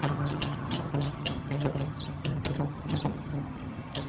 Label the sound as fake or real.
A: fake